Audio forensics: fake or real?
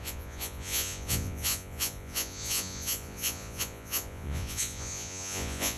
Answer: fake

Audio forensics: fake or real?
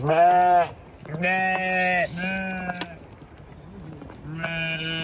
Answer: real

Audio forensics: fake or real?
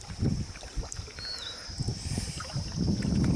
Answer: real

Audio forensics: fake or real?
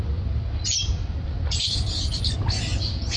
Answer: real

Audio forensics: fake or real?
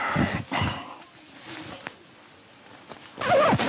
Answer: real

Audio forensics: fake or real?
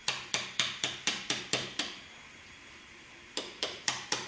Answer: fake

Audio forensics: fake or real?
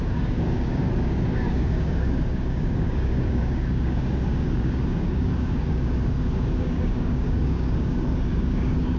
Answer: fake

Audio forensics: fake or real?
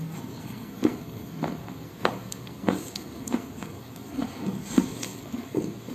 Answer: fake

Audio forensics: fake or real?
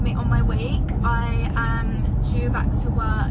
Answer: real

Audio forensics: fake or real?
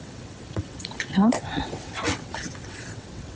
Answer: fake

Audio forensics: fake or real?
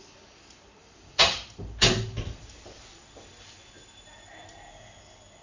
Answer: real